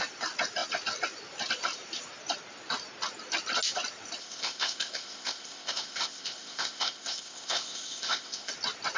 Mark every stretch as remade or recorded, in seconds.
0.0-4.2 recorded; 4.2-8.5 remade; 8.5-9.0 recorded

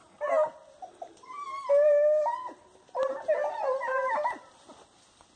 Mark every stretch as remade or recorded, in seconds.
0.0-3.9 recorded; 3.9-5.0 remade; 5.0-5.4 recorded

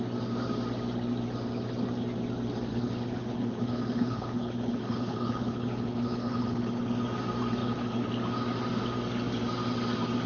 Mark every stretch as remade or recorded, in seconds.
0.0-2.7 recorded; 2.7-6.8 remade; 6.8-7.6 recorded; 7.6-8.1 remade; 8.1-10.3 recorded